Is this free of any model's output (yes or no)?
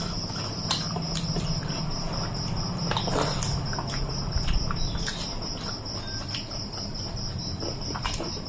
yes